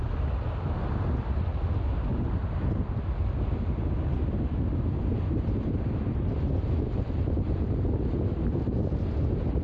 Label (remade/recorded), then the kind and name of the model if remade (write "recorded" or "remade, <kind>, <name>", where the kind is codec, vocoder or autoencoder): recorded